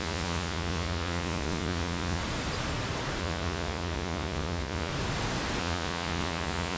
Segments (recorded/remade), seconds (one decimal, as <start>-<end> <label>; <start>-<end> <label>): 0.0-2.2 remade; 2.2-3.2 recorded; 3.2-4.9 remade; 4.9-5.6 recorded; 5.6-6.8 remade